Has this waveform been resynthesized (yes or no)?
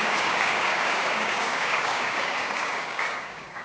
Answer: yes